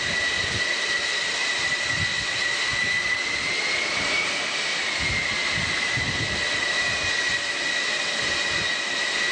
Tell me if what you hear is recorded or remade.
recorded